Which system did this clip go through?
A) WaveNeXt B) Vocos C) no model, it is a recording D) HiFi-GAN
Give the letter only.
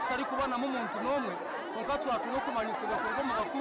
C